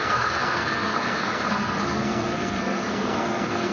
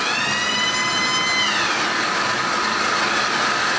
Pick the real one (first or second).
second